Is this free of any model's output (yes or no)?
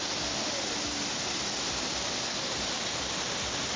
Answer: yes